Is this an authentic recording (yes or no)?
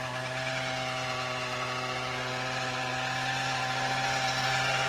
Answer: yes